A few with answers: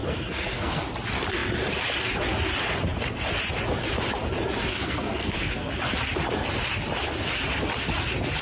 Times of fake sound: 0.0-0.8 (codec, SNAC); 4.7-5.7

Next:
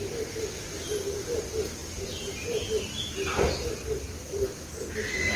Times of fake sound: none